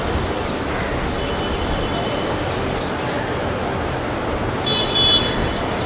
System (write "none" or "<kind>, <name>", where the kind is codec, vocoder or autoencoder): none